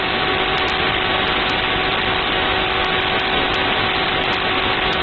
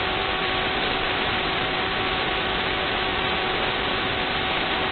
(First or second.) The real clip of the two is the first